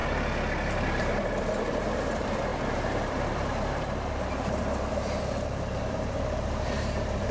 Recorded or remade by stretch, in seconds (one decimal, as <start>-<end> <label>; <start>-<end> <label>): 0.0-1.0 recorded; 1.0-7.3 remade